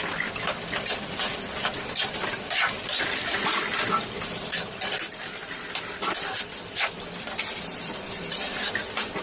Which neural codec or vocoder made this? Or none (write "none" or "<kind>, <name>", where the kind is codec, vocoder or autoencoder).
vocoder, BigVGAN v2